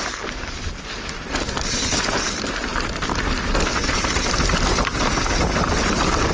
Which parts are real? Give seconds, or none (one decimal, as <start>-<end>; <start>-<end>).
0.0-6.3